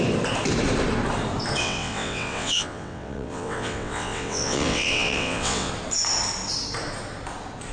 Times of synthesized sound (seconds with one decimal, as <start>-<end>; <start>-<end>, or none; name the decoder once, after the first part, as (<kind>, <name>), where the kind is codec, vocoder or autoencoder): 1.6-5.7 (vocoder, WaveNeXt)